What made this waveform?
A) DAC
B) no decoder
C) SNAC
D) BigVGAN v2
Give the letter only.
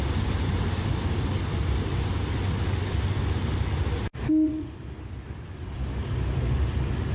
B